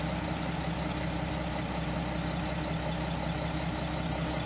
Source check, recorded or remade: recorded